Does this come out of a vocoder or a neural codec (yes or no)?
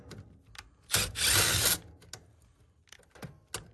no